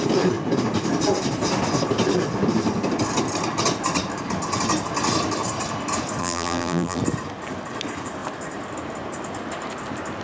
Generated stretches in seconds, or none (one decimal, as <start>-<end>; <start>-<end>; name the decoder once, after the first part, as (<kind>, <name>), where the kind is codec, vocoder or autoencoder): 6.2-7.0 (vocoder, BigVGAN v2)